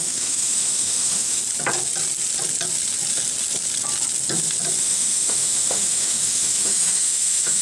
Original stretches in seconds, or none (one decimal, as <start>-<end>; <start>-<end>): 1.4-4.8

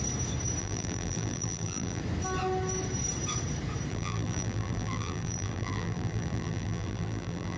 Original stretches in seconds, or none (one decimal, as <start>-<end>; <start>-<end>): 0.0-0.6; 2.0-3.9

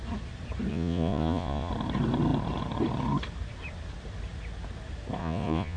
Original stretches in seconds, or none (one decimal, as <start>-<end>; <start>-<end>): 0.0-0.7; 1.7-5.2

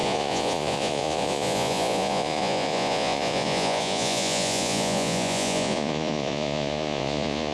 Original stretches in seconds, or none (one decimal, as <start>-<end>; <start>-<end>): none

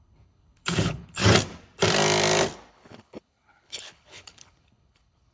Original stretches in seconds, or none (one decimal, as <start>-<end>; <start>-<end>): 1.2-2.7

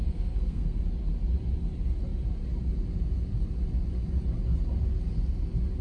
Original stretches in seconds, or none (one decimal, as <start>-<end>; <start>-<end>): 0.8-5.8

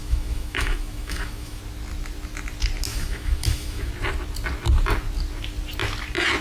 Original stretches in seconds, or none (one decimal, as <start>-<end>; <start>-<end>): 1.6-2.9; 3.9-6.4